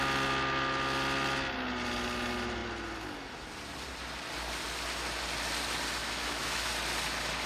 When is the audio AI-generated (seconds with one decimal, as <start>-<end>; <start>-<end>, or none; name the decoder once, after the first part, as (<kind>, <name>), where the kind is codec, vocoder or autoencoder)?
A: 6.0-6.7 (autoencoder, DAC-VAE)